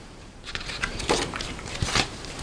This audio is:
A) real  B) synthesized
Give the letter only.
B